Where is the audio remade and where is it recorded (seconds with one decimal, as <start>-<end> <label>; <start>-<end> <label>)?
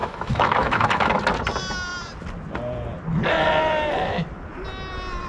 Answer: 0.0-1.2 remade; 1.2-5.3 recorded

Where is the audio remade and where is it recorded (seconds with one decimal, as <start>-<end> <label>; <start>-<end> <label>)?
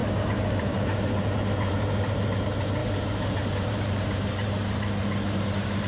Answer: 0.0-2.8 recorded; 2.8-5.9 remade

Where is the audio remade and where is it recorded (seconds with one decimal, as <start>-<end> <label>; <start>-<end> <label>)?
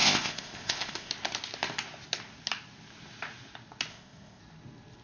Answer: 0.0-1.1 remade; 1.1-3.9 recorded; 3.9-4.4 remade; 4.4-5.0 recorded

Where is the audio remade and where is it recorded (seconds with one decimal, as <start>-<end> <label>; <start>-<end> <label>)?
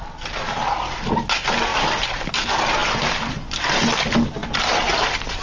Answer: 0.0-5.4 recorded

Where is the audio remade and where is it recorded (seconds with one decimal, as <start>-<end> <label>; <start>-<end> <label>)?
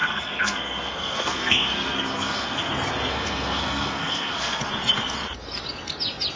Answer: 0.0-2.7 remade; 2.7-3.1 recorded; 3.1-4.6 remade; 4.6-6.4 recorded